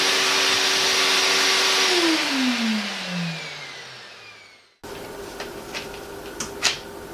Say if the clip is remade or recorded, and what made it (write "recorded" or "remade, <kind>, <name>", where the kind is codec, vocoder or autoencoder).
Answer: recorded